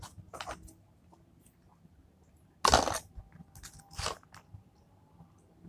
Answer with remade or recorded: recorded